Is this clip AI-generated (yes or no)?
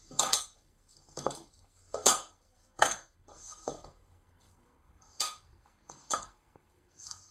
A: yes